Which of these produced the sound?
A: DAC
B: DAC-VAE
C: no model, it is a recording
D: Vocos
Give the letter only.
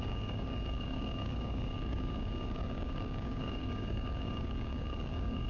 A